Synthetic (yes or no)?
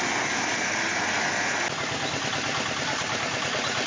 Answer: no